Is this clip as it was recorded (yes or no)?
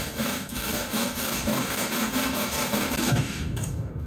no